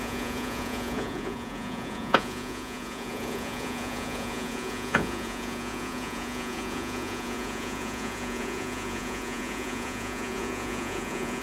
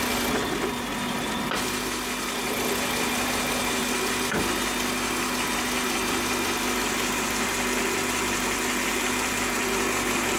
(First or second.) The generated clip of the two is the first